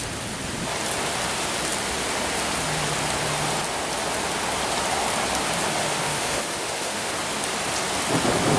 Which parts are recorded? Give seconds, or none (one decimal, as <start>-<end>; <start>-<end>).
0.0-5.8; 7.1-8.6